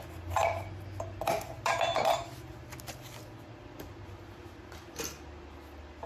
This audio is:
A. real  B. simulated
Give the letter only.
A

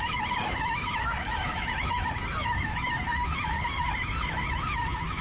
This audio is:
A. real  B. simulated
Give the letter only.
B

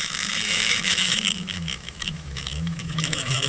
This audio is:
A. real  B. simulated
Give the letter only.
B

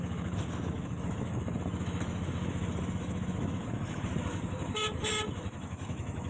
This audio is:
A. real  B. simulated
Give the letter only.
B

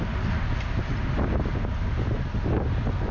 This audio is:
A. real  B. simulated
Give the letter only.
A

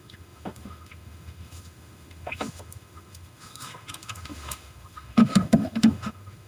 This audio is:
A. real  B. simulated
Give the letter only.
B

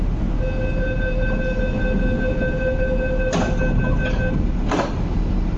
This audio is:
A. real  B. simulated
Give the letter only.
A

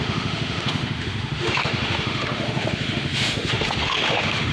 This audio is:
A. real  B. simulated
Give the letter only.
B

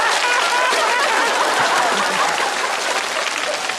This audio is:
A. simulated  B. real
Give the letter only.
B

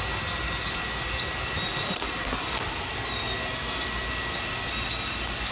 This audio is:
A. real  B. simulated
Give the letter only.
A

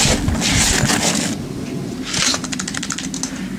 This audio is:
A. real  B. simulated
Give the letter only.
A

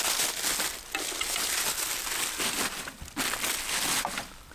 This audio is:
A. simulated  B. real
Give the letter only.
B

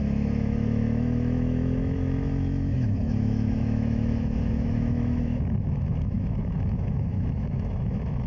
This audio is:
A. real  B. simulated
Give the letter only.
B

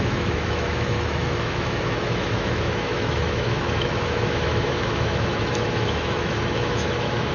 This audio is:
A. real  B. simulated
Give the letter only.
B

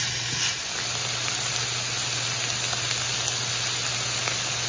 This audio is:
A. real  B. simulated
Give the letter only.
A